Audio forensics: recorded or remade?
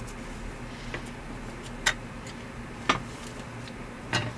recorded